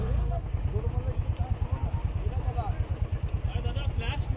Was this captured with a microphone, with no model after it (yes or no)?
yes